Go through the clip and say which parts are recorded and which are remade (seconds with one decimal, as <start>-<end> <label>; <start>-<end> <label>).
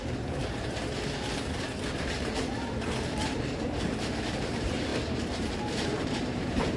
0.0-6.8 remade